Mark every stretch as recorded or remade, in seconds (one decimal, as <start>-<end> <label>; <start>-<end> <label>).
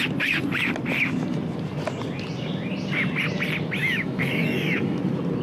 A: 0.0-3.8 recorded; 3.8-5.0 remade; 5.0-5.4 recorded